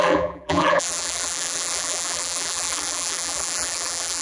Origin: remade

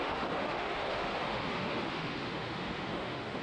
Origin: remade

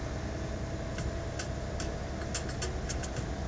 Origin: recorded